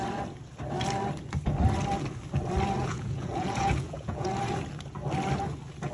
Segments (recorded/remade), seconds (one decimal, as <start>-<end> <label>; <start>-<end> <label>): 0.0-2.8 recorded; 2.8-4.3 remade; 4.3-5.9 recorded